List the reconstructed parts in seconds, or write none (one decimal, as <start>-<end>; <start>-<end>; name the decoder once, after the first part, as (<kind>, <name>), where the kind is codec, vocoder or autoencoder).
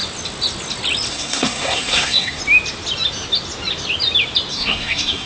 1.1-2.4 (codec, SNAC); 4.5-5.3